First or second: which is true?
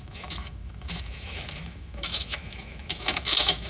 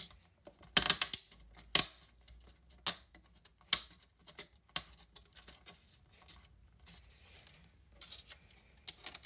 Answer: second